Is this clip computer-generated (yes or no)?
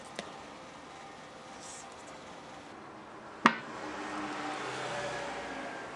no